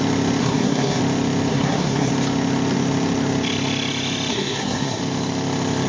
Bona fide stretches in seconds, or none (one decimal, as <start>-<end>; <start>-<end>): 0.0-0.4; 1.0-1.5; 2.1-4.3; 5.0-5.9